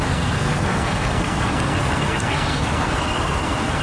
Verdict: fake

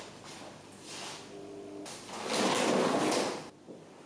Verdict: real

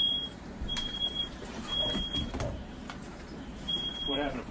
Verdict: fake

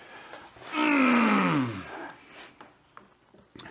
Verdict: real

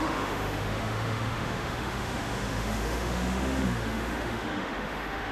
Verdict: fake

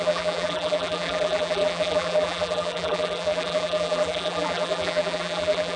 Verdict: fake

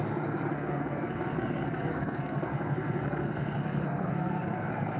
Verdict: fake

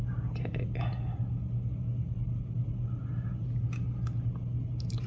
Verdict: real